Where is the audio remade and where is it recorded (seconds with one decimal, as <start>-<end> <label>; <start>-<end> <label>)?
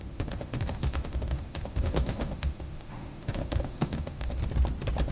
0.0-4.4 remade; 4.4-5.1 recorded